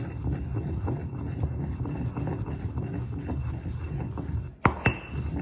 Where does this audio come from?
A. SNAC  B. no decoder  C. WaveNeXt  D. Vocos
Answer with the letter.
B